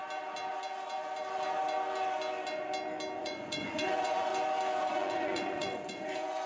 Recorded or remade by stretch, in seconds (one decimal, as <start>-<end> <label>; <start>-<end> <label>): 0.0-3.2 recorded; 3.2-4.3 remade; 4.3-4.9 recorded; 4.9-6.5 remade